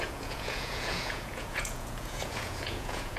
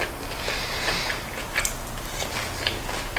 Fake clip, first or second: first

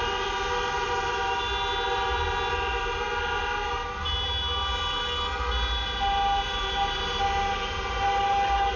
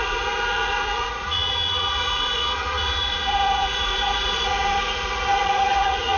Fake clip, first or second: second